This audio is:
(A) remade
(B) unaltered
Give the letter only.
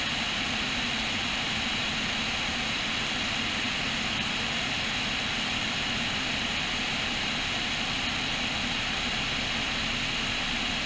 B